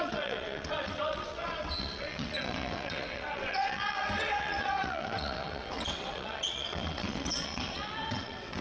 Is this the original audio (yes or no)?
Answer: no